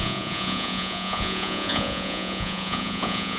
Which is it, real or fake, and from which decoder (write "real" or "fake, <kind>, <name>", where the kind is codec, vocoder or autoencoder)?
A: fake, vocoder, Vocos